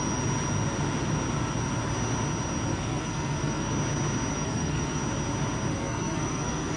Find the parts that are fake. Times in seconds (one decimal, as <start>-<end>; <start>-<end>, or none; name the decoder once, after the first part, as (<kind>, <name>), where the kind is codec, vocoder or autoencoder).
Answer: 2.7-3.7 (codec, SNAC); 4.3-5.0; 5.7-6.8